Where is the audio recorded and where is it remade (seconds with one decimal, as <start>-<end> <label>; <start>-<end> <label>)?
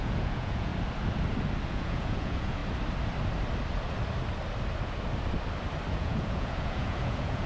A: 0.0-0.7 remade; 0.7-1.7 recorded; 1.7-2.6 remade; 2.6-5.9 recorded; 5.9-7.5 remade